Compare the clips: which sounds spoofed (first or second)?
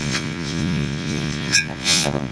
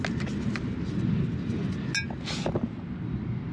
first